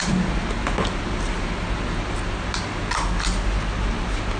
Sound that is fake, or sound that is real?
real